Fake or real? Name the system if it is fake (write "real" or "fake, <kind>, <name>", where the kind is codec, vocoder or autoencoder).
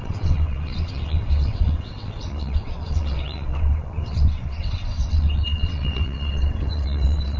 fake, vocoder, WaveNeXt